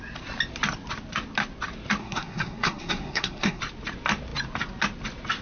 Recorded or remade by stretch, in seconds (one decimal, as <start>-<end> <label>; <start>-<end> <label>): 0.0-2.0 recorded; 2.0-3.6 remade; 3.6-5.4 recorded